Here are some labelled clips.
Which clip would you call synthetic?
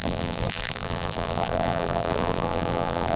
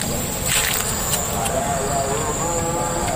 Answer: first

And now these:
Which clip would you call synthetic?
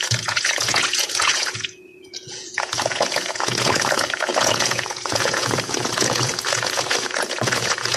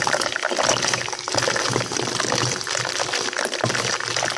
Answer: first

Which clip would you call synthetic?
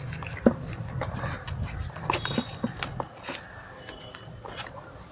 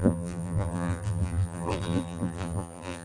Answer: second